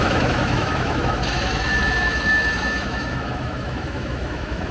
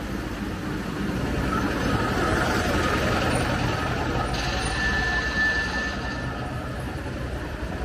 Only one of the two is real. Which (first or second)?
second